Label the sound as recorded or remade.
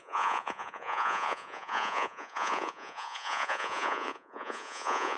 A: remade